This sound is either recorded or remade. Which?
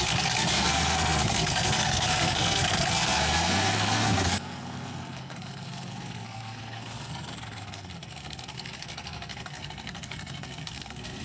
remade